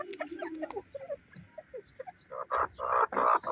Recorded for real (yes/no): yes